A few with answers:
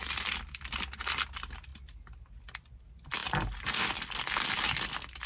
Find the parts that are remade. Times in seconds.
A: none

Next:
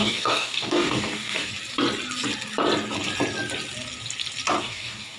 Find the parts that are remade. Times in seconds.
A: 0.0-1.5 (codec, DAC); 4.6-5.2

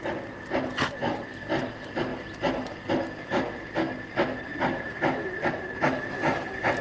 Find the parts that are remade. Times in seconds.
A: none

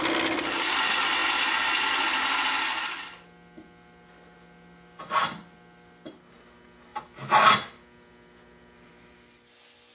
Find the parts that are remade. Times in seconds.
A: none

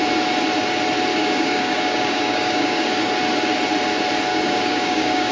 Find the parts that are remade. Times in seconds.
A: 1.1-3.1 (codec, DAC); 4.3-5.3

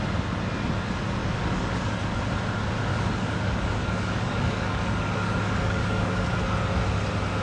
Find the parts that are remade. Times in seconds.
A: 1.2-2.2 (codec, DAC); 2.9-6.8

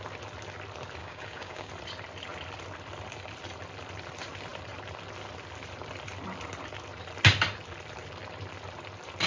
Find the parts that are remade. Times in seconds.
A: 1.0-1.7 (codec, DAC)

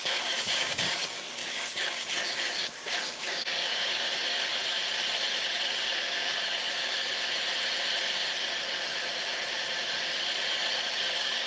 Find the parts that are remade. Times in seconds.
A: 0.0-4.5 (codec, DAC); 5.4-7.1; 11.1-11.5